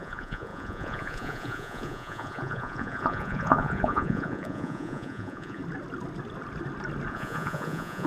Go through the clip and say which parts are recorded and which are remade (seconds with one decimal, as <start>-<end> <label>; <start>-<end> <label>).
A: 0.0-5.6 remade; 5.6-7.1 recorded; 7.1-8.1 remade